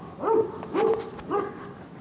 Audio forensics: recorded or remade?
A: recorded